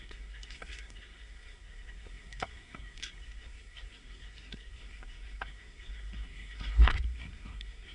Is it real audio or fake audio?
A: fake